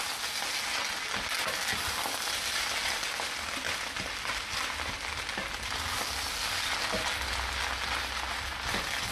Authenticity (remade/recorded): recorded